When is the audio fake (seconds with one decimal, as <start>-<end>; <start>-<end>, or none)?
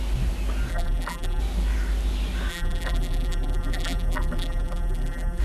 0.7-1.4; 2.5-5.4